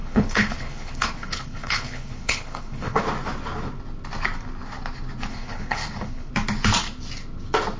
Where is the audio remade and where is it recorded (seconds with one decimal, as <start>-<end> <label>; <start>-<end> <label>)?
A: 0.0-3.0 remade; 3.0-5.3 recorded; 5.3-6.3 remade; 6.3-7.8 recorded